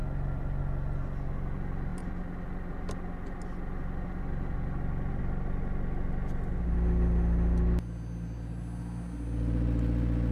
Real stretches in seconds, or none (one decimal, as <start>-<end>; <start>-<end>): 0.0-10.3